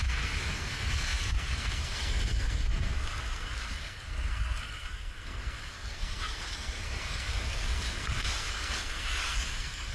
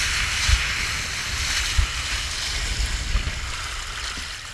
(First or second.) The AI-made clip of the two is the first